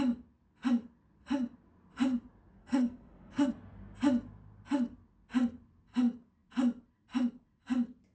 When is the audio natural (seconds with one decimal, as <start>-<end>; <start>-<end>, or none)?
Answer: 0.0-2.6; 3.5-8.1